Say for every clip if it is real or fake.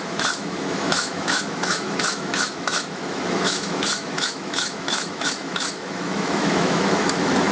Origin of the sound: fake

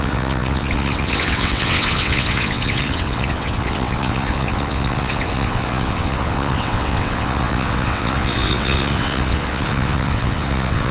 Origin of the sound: fake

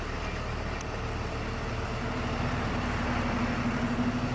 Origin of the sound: real